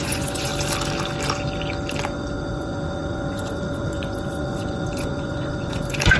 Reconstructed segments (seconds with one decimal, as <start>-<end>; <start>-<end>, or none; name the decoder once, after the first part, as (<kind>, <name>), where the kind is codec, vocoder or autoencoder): 0.0-0.5 (vocoder, Vocos); 2.5-6.2